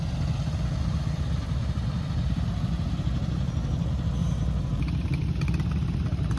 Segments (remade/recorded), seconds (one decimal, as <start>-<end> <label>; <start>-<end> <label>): 0.0-6.4 recorded